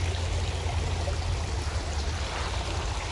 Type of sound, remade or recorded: recorded